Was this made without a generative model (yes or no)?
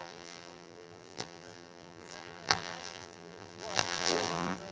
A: no